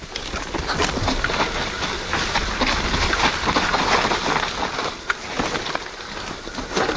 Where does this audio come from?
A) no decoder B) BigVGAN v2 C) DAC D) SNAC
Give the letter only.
A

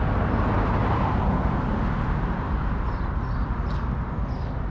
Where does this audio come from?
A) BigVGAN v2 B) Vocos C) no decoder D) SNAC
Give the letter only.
C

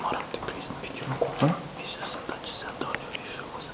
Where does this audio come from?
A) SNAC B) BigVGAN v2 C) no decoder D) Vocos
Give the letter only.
C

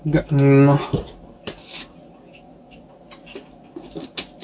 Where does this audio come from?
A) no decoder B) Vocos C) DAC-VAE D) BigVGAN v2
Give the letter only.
A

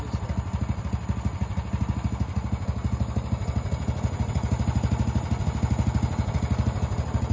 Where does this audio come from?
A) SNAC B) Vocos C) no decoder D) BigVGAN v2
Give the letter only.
C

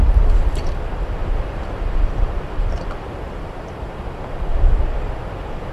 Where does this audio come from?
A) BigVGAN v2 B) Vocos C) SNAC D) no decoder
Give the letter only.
A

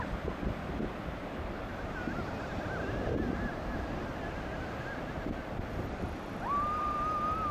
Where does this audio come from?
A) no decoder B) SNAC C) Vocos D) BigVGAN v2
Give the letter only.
A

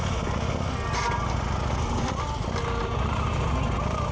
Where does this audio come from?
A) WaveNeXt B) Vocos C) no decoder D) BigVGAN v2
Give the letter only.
C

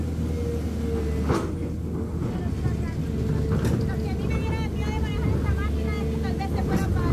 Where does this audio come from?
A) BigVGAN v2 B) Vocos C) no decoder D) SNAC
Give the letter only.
C